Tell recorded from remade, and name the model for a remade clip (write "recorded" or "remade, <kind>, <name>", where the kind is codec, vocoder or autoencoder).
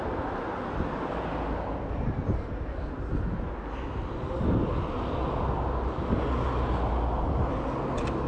recorded